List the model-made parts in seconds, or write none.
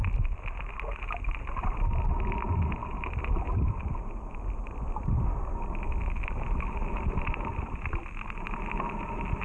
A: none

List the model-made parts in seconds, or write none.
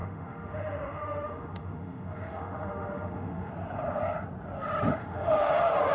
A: 0.0-3.5 (autoencoder, DAC-VAE); 5.0-5.5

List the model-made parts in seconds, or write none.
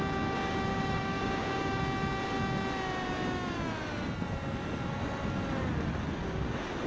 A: 0.7-1.8 (codec, DAC)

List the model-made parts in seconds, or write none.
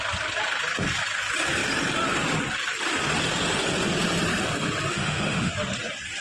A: 4.9-5.5 (autoencoder, DAC-VAE)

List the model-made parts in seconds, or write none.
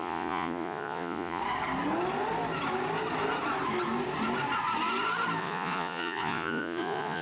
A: 0.0-1.4 (vocoder, Vocos); 5.4-7.2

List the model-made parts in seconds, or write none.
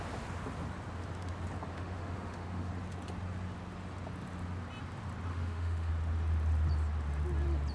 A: 1.7-2.7 (autoencoder, DAC-VAE); 5.3-5.9